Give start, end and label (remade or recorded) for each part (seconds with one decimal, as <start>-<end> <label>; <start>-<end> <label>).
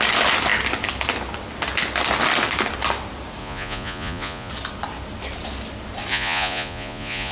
0.0-3.4 recorded; 3.4-4.5 remade; 4.5-6.1 recorded; 6.1-7.3 remade